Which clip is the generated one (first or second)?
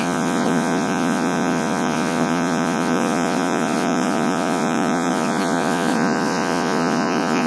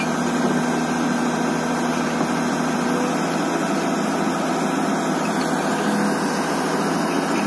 first